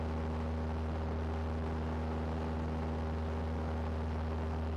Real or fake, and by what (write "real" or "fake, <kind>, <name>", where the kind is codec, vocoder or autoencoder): real